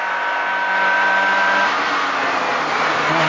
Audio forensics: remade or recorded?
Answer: recorded